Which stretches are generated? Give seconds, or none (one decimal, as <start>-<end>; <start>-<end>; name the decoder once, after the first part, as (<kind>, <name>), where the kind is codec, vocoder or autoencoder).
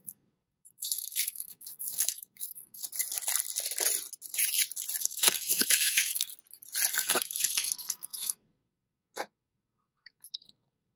0.0-2.8 (codec, SNAC); 5.0-6.3; 6.9-11.0